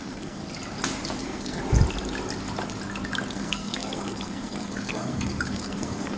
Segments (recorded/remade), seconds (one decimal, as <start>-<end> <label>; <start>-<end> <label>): 0.0-0.4 remade; 0.4-1.2 recorded; 1.2-1.6 remade; 1.6-3.3 recorded; 3.3-6.2 remade